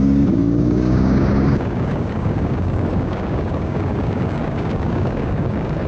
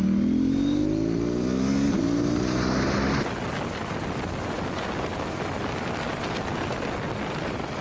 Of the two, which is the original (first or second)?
second